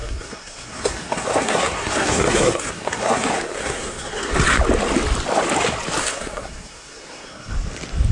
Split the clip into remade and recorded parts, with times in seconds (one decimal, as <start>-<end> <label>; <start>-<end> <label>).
0.0-4.3 remade; 4.3-6.0 recorded; 6.0-7.5 remade; 7.5-8.1 recorded